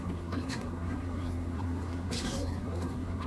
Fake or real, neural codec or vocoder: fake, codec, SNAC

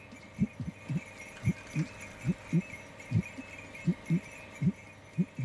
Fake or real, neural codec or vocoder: real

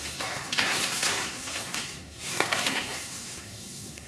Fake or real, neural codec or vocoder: fake, codec, SNAC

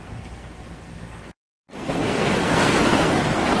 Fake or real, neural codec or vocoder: fake, codec, SNAC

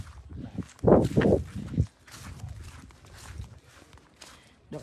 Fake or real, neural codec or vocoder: real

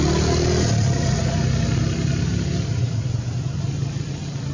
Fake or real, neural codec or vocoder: real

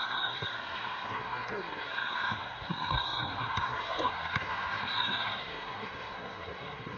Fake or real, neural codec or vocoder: fake, codec, SNAC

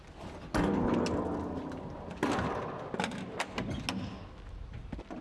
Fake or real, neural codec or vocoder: real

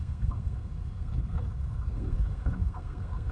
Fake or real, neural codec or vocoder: fake, codec, SNAC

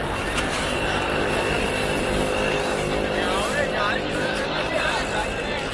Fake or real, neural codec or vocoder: real